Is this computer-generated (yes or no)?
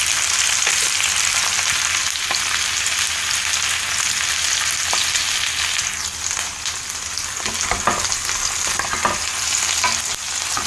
no